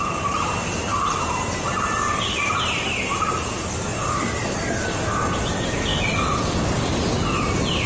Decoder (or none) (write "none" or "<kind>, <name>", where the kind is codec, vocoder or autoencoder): none